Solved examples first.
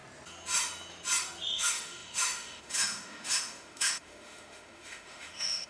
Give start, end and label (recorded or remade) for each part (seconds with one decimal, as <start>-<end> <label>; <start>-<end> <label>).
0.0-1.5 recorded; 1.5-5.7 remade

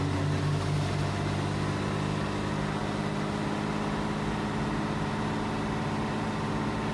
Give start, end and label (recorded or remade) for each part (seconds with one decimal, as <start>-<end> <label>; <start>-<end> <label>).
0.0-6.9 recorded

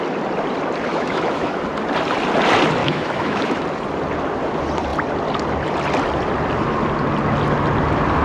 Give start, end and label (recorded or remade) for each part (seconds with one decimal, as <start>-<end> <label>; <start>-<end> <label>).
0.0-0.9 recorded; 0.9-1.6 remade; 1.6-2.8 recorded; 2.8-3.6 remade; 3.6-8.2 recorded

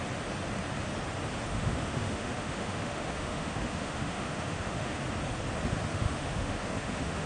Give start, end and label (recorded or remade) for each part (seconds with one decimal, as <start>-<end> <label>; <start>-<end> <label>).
0.0-1.5 recorded; 1.5-5.0 remade; 5.0-5.9 recorded; 5.9-7.3 remade

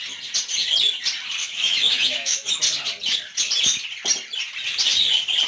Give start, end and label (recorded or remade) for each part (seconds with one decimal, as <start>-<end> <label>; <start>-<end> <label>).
0.0-1.4 recorded; 1.4-2.5 remade; 2.5-5.5 recorded